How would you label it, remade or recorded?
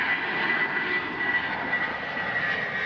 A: recorded